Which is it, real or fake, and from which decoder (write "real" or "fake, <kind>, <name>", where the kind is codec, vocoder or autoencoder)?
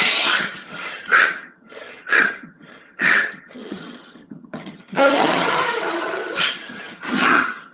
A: fake, vocoder, HiFi-GAN